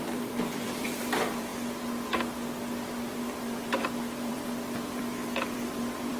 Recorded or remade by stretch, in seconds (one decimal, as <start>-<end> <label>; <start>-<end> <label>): 0.0-1.5 remade; 1.5-3.1 recorded; 3.1-6.2 remade